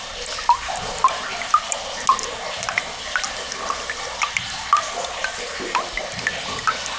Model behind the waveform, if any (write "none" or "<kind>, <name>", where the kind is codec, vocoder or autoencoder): none